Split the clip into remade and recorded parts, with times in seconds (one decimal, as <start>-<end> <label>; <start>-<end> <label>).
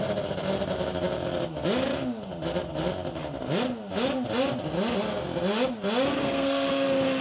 0.0-6.2 recorded; 6.2-6.7 remade; 6.7-7.2 recorded